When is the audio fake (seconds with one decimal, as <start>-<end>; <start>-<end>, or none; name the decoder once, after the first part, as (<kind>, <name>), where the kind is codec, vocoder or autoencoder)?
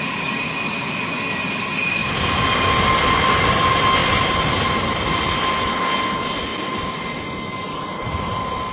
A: 2.0-2.6 (vocoder, BigVGAN v2); 4.0-4.9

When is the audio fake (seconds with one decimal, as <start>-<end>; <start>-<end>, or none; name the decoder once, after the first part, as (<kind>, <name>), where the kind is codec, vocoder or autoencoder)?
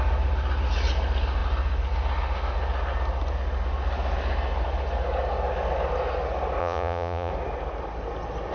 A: 6.6-7.3 (vocoder, Vocos)